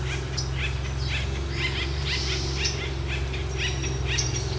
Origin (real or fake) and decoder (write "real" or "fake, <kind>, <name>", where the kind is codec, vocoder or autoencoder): real